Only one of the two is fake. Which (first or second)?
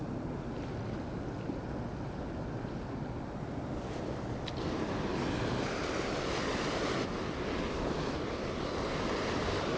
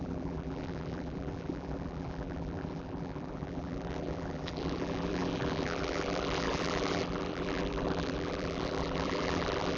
second